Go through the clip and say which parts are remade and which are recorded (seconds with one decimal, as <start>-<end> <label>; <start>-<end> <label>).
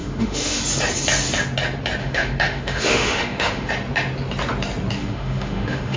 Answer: 0.0-0.6 remade; 0.6-2.0 recorded; 2.0-3.7 remade; 3.7-5.0 recorded; 5.0-6.0 remade